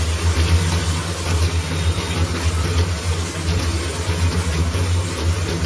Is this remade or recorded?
recorded